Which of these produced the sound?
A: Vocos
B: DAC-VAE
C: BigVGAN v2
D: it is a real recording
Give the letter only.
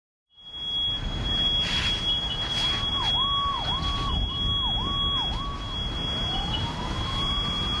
D